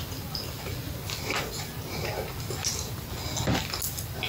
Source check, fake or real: real